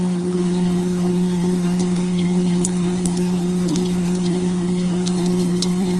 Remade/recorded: remade